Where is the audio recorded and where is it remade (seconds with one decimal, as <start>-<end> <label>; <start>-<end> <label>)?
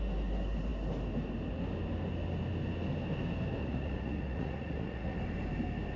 0.0-3.6 recorded; 3.6-5.2 remade; 5.2-6.0 recorded